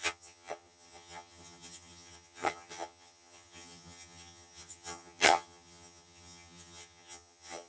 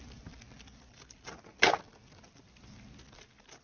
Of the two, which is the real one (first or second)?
second